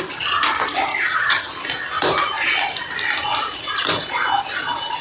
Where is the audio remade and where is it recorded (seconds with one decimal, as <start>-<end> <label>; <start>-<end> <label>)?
0.0-0.9 recorded; 0.9-1.5 remade; 1.5-5.0 recorded